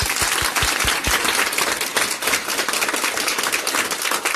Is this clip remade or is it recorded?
recorded